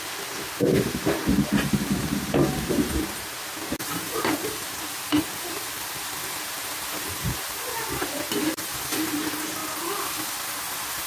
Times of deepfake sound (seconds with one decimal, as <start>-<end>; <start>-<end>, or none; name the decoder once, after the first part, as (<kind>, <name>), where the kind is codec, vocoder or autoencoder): 0.0-9.6 (vocoder, BigVGAN v2)